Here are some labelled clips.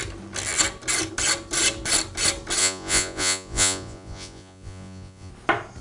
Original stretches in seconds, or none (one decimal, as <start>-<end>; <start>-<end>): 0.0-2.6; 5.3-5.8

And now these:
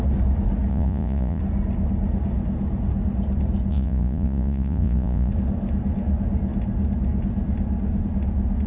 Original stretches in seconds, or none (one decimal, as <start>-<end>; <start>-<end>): 0.0-0.7; 1.4-3.7; 5.3-8.7

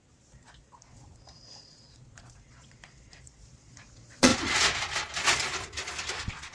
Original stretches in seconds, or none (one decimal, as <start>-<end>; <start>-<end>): 4.3-6.1

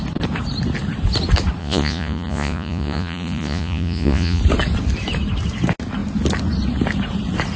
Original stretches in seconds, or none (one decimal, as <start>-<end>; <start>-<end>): 0.0-1.6; 4.4-7.6

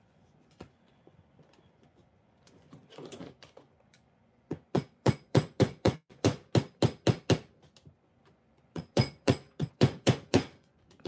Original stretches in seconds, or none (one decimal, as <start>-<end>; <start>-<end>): 6.4-8.0

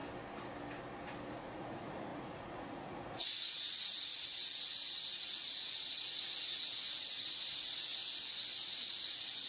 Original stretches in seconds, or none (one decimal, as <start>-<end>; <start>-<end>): 0.0-1.3; 4.1-5.2; 7.9-8.5

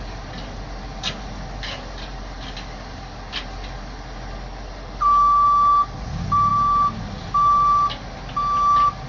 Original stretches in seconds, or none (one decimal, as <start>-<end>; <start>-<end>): 0.0-9.1

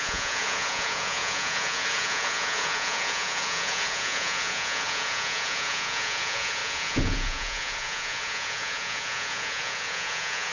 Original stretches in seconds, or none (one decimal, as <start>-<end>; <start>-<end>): none